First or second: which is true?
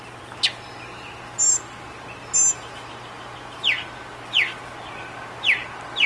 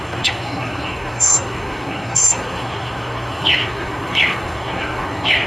first